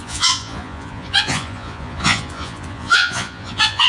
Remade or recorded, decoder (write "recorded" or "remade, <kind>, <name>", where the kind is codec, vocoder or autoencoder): remade, vocoder, Vocos